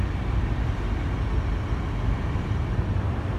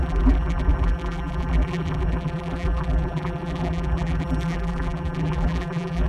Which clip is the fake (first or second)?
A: second